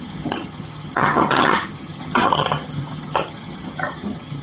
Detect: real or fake fake